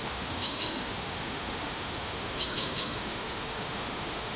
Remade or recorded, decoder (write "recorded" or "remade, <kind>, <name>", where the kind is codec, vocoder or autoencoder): remade, autoencoder, DAC-VAE